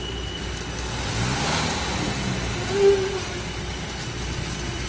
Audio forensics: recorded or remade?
recorded